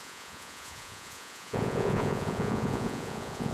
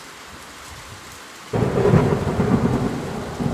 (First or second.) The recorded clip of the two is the second